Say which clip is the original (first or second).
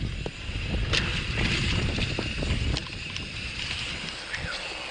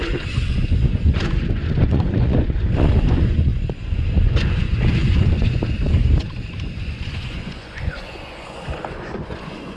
first